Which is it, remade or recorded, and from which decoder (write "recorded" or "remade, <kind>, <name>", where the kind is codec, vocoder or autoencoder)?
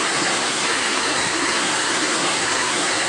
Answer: remade, codec, SNAC